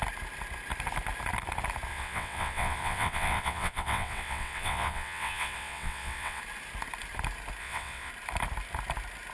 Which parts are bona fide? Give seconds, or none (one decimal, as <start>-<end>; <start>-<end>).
0.0-1.9; 6.4-7.6; 8.1-9.3